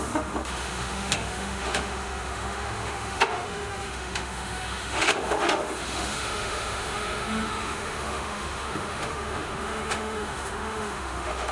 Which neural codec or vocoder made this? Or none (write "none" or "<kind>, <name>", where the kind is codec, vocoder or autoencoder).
autoencoder, DAC-VAE